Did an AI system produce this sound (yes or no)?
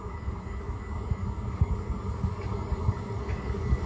yes